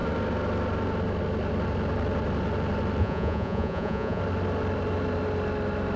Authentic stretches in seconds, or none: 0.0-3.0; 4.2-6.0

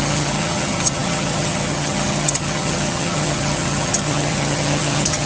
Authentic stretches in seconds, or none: none

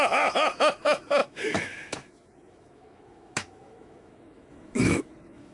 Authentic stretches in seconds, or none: none

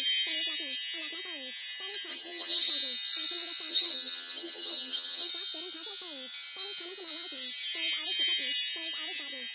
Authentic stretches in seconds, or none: 0.0-2.1; 2.7-3.7; 5.3-9.5

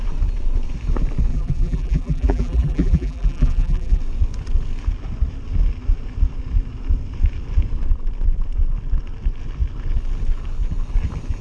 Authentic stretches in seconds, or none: 0.0-1.3; 4.0-11.4

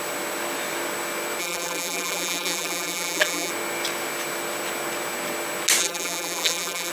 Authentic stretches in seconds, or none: 0.0-1.4; 3.5-5.8

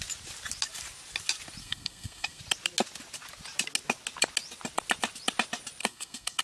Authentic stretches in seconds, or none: 0.0-1.6; 2.4-5.8

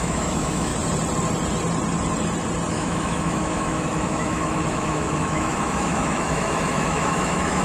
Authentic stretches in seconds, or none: 0.7-2.7